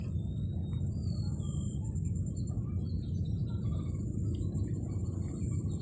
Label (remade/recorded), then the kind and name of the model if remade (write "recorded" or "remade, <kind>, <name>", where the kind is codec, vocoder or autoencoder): recorded